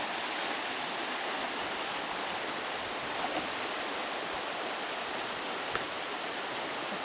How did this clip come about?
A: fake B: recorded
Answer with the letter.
B